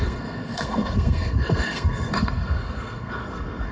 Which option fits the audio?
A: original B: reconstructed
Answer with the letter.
B